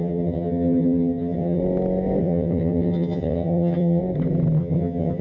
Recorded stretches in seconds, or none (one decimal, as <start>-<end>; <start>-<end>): 1.6-2.2; 4.0-4.6